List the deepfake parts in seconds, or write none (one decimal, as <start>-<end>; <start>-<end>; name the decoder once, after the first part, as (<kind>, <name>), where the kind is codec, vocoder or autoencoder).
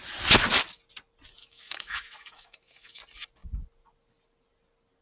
1.4-3.0 (autoencoder, DAC-VAE)